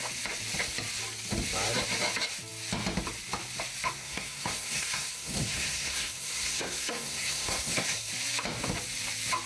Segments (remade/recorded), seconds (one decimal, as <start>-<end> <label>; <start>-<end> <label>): 0.0-4.0 recorded; 4.0-8.1 remade; 8.1-9.5 recorded